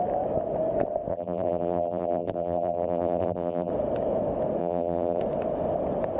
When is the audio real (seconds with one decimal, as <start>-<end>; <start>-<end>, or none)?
0.0-1.1; 3.7-4.6; 5.2-6.2